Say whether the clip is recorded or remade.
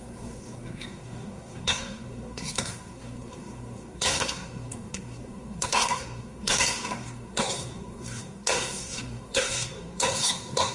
remade